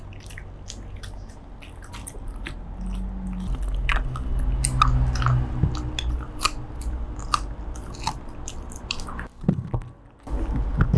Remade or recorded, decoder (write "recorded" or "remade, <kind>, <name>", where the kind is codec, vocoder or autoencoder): recorded